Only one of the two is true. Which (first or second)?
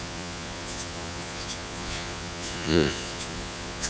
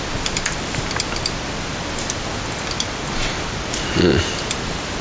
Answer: second